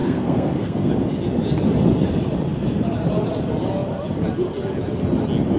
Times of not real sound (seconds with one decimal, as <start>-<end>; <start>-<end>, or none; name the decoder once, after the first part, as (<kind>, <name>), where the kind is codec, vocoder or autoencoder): 0.0-0.9 (codec, SNAC)